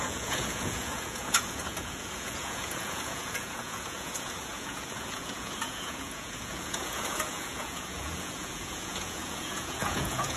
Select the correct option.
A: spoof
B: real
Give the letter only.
A